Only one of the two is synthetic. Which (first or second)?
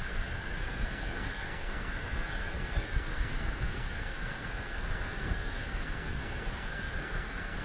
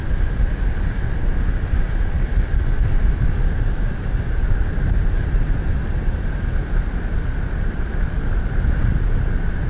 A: first